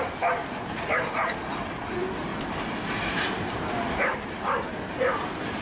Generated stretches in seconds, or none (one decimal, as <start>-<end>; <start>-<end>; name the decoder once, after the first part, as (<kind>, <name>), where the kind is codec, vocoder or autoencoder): 0.4-1.7 (vocoder, BigVGAN v2); 2.3-4.7